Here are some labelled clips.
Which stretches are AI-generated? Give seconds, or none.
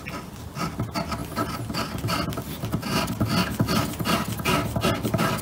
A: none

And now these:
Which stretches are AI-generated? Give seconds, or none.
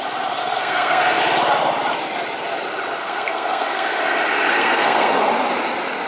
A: 0.4-1.2 (codec, SNAC); 3.0-4.0; 4.5-5.3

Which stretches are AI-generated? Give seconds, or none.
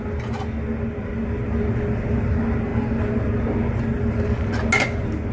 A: none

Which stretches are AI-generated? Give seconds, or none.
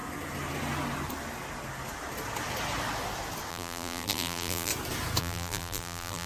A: 3.5-4.7 (vocoder, BigVGAN v2); 5.2-6.3